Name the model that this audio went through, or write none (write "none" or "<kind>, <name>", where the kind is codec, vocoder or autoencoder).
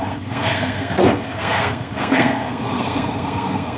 codec, SNAC